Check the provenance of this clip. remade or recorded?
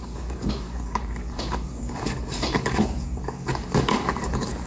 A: remade